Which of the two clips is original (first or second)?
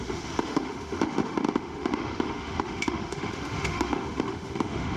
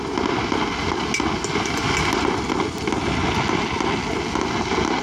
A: second